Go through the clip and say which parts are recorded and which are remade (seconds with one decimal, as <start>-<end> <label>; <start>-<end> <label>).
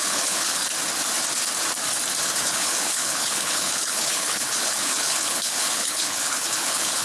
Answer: 0.0-0.6 remade; 0.6-2.4 recorded; 2.4-7.0 remade